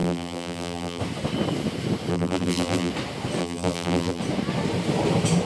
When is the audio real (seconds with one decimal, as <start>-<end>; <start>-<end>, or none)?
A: 1.0-2.1; 2.9-3.4; 4.2-5.5